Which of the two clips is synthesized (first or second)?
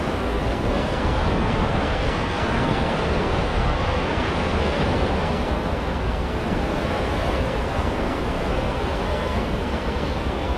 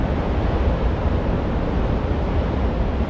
first